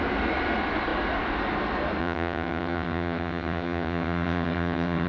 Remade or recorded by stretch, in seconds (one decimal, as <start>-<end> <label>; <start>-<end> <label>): 0.0-2.0 recorded; 2.0-5.1 remade